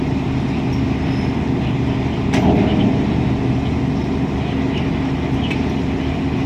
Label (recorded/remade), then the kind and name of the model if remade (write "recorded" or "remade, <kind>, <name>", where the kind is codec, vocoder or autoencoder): recorded